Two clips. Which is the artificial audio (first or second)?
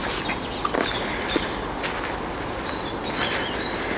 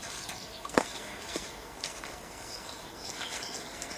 second